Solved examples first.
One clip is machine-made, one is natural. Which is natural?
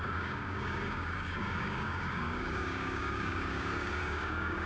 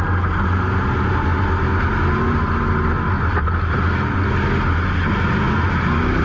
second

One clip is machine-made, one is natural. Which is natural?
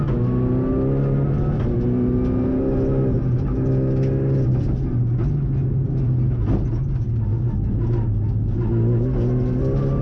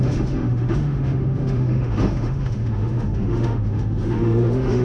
first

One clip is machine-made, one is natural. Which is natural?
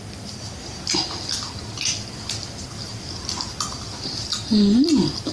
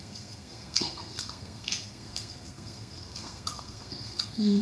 first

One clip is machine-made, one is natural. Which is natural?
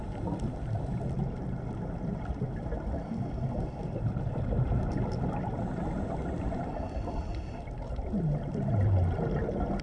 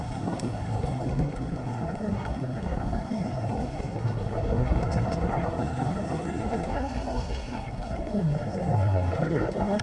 first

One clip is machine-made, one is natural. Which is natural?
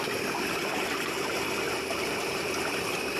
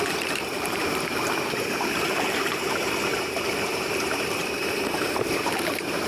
first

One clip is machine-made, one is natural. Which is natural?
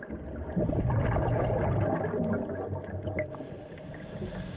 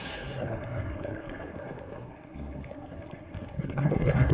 first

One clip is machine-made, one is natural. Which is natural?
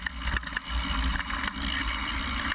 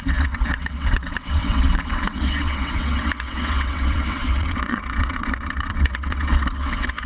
first